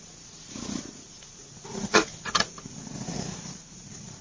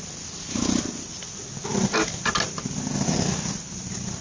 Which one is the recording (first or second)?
second